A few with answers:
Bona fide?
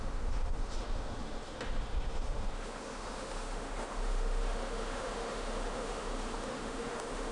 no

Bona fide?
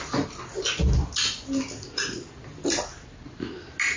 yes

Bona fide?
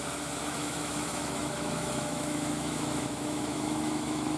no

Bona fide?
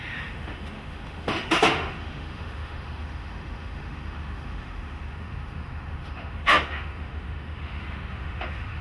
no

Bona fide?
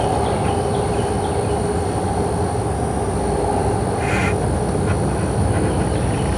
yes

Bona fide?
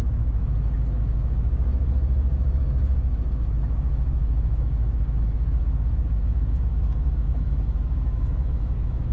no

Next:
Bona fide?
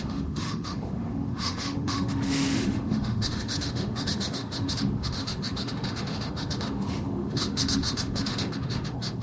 no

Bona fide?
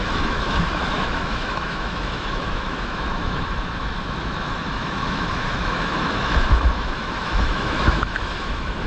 no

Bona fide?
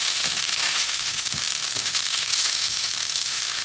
no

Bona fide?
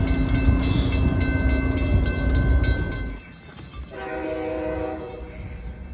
yes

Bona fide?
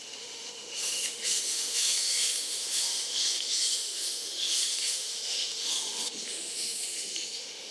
no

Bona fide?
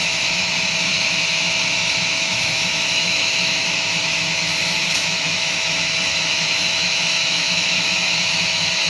no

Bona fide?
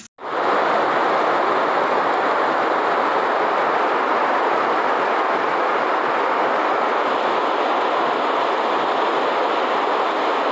yes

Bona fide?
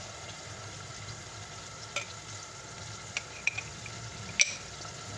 yes